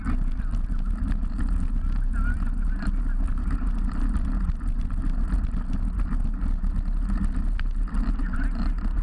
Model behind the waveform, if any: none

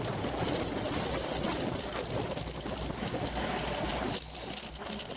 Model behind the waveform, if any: none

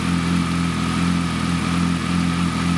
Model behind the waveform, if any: none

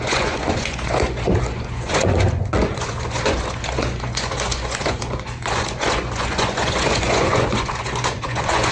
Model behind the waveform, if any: vocoder, Vocos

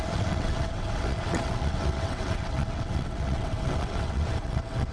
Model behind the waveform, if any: vocoder, WaveNeXt